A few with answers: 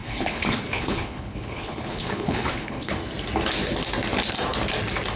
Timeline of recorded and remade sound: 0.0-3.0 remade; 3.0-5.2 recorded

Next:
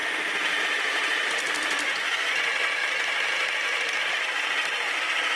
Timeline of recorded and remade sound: 0.0-0.6 recorded; 0.6-5.4 remade